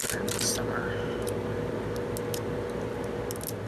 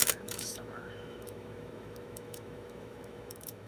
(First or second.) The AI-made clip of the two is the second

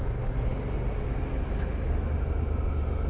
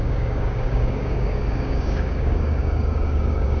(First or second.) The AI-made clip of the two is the second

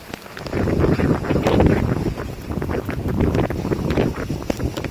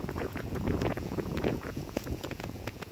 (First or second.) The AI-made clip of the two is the second